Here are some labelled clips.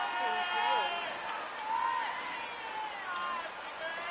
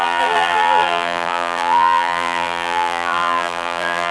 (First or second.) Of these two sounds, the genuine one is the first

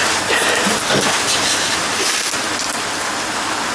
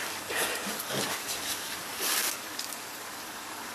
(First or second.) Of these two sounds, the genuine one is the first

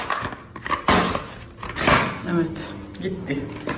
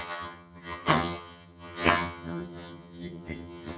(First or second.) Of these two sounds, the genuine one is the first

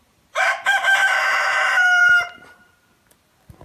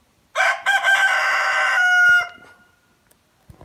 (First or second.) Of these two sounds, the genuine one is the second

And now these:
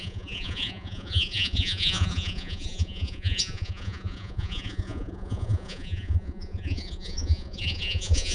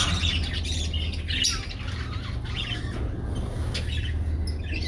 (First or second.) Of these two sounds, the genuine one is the second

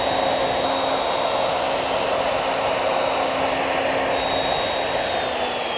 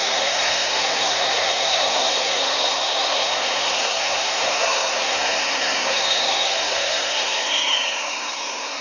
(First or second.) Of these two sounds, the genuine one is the first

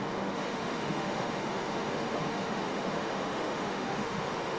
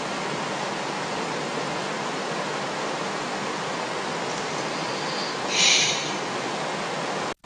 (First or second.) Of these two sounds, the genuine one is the second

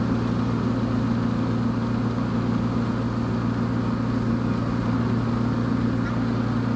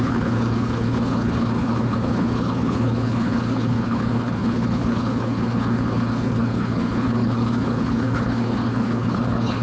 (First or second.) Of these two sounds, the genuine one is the first